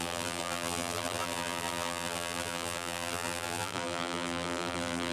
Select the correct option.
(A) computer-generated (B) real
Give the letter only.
A